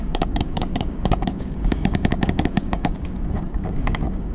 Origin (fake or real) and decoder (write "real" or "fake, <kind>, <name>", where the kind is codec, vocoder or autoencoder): fake, codec, DAC